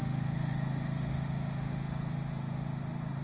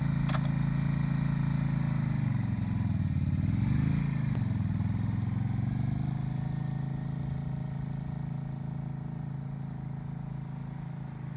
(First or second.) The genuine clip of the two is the second